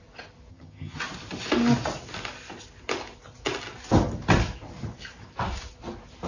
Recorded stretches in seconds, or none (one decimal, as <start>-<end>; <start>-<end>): 0.0-0.5; 1.0-6.3